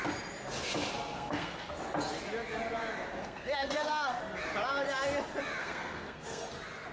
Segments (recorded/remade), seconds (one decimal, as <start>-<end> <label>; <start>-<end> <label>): 0.0-1.1 recorded; 1.1-1.7 remade; 1.7-3.2 recorded; 3.2-4.2 remade; 4.2-5.6 recorded; 5.6-6.5 remade; 6.5-6.9 recorded